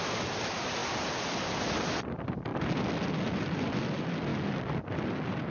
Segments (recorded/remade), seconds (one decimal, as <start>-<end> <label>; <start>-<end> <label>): 0.0-0.8 remade; 0.8-1.7 recorded; 1.7-2.5 remade; 2.5-3.1 recorded; 3.1-4.3 remade; 4.3-4.8 recorded; 4.8-5.5 remade